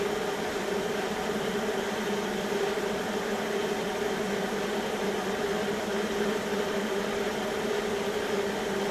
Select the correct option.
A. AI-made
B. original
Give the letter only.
A